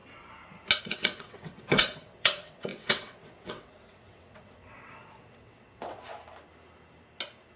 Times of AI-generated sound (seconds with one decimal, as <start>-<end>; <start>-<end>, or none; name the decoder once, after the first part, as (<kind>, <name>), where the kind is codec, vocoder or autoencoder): 0.8-6.1 (vocoder, WaveNeXt)